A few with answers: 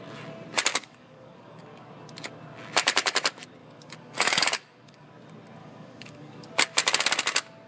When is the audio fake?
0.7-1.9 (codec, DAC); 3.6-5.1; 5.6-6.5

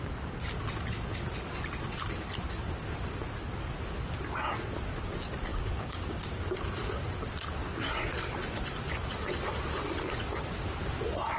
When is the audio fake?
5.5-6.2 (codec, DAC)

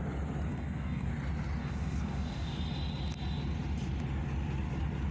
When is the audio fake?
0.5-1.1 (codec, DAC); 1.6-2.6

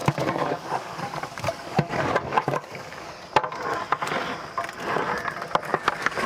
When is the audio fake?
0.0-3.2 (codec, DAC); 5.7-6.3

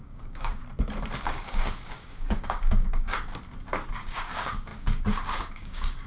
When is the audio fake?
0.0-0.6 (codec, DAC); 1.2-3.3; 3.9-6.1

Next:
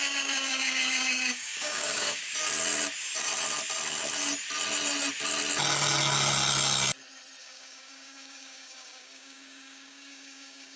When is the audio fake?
0.0-2.2 (codec, DAC); 7.4-10.8